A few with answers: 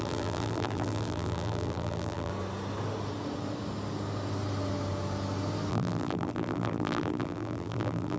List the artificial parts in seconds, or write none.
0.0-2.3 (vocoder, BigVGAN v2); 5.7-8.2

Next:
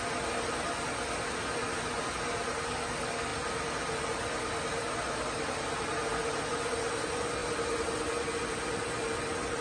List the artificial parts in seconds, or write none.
none

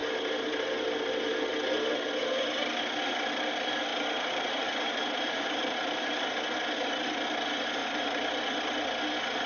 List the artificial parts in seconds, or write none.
3.9-6.4 (vocoder, BigVGAN v2); 7.8-8.3

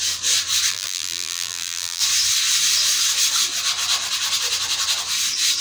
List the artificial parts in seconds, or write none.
0.7-2.0 (vocoder, BigVGAN v2)

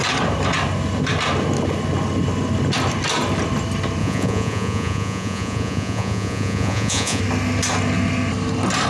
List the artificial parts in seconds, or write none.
4.0-7.2 (vocoder, Vocos)

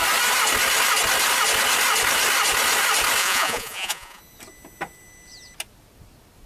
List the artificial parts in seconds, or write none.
3.2-4.2 (vocoder, Vocos)

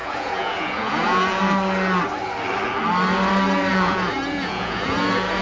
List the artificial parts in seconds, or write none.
0.0-1.4 (vocoder, Vocos); 3.7-5.4